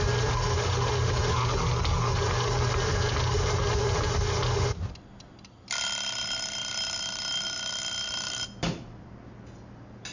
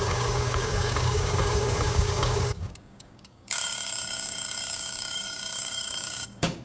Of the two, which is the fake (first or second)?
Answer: second